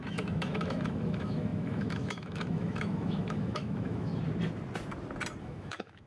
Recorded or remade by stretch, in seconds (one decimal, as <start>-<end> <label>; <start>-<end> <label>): 0.0-4.1 remade; 4.1-5.4 recorded; 5.4-6.1 remade